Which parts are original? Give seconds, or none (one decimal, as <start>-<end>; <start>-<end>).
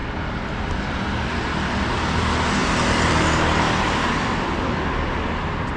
0.0-5.8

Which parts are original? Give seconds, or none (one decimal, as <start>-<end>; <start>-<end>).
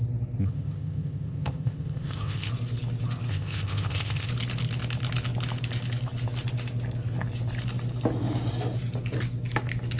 0.0-0.4; 2.5-3.3; 4.3-10.0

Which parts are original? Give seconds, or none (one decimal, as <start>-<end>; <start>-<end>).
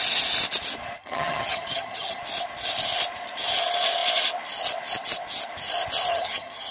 0.0-1.0; 2.2-6.1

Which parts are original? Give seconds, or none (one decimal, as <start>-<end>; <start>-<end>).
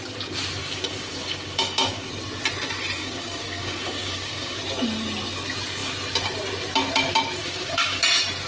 0.0-0.6; 2.1-3.0; 4.6-7.4; 8.0-8.5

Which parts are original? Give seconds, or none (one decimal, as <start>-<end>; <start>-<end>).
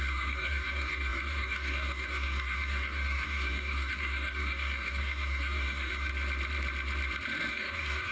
6.1-7.5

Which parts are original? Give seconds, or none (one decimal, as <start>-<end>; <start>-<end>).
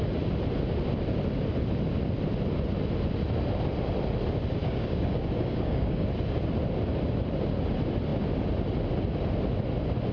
0.0-4.6; 6.1-10.1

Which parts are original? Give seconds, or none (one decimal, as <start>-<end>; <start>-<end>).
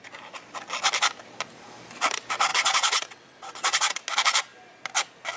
0.0-2.5; 4.0-5.4